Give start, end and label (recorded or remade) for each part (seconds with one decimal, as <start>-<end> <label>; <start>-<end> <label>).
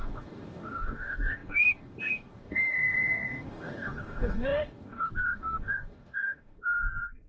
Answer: 0.0-7.3 remade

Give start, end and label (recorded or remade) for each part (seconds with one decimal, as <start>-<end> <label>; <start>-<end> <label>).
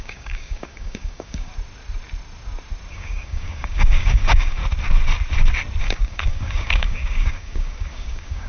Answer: 0.0-1.5 remade; 1.5-2.9 recorded; 2.9-4.6 remade; 4.6-5.8 recorded; 5.8-8.5 remade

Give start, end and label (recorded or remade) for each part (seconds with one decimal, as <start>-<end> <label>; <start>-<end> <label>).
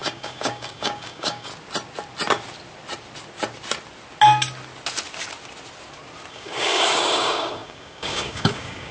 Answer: 0.0-1.5 remade; 1.5-6.3 recorded; 6.3-8.9 remade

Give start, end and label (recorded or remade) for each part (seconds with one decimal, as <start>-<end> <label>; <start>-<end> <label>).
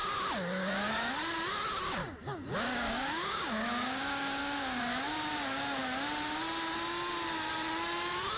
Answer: 0.0-2.0 recorded; 2.0-4.8 remade; 4.8-8.4 recorded